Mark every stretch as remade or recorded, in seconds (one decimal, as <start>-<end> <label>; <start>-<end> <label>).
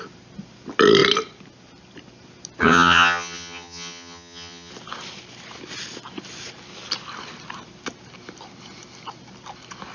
0.0-2.6 recorded; 2.6-4.7 remade; 4.7-9.9 recorded